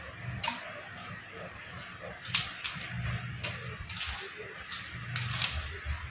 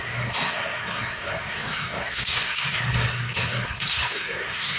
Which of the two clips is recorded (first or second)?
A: first